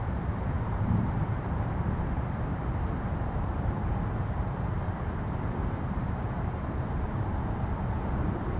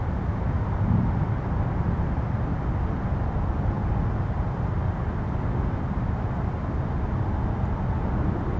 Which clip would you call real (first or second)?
second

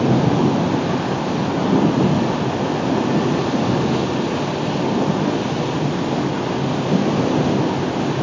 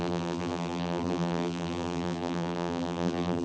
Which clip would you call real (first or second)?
first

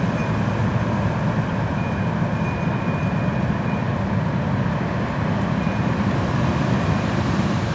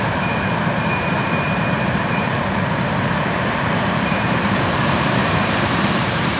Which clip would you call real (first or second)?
first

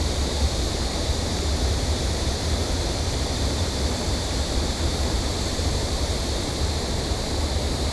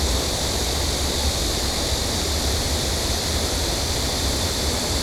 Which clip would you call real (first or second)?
second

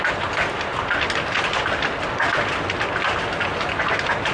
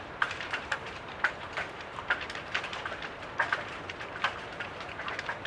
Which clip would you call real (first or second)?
first